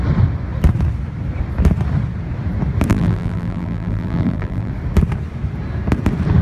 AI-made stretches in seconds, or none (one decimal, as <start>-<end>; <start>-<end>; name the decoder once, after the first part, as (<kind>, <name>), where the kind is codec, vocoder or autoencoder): 2.9-4.7 (vocoder, BigVGAN v2)